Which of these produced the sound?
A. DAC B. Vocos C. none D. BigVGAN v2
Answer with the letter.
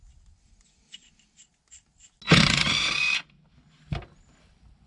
C